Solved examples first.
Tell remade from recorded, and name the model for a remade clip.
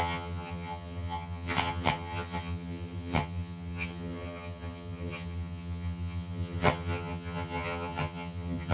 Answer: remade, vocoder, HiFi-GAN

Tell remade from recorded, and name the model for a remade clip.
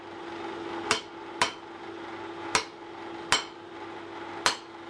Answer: recorded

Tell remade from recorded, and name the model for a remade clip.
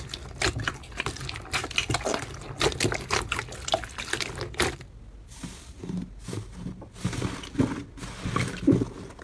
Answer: recorded